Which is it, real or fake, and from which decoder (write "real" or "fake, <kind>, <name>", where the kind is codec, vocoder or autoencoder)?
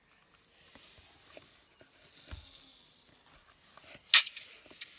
real